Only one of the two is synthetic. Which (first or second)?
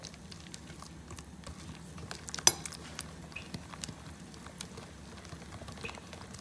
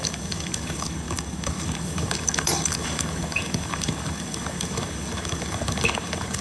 second